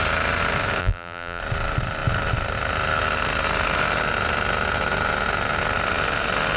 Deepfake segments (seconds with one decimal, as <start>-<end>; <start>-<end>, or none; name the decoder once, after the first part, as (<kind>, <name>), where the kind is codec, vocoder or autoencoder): 0.8-1.4 (vocoder, BigVGAN v2)